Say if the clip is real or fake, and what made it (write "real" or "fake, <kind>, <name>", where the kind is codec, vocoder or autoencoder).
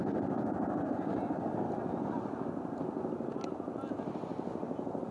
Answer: real